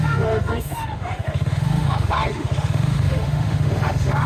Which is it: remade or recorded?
remade